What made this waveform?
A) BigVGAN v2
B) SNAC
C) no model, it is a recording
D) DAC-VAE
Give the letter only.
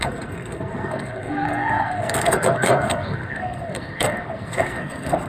B